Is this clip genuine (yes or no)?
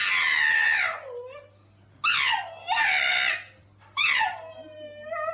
yes